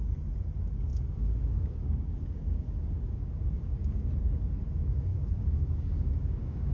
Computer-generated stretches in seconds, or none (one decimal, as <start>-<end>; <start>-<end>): 0.9-4.1; 5.1-6.7

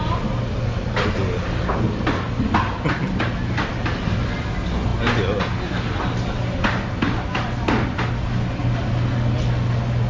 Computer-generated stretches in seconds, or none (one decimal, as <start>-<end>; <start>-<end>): none